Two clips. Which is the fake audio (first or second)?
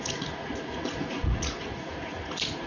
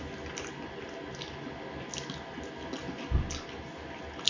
first